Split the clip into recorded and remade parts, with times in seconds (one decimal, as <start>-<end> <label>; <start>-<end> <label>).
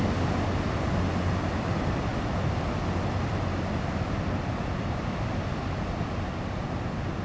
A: 0.0-7.2 recorded